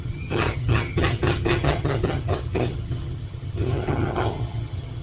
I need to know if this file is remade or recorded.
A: remade